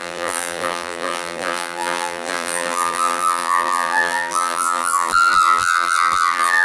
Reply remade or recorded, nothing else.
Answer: remade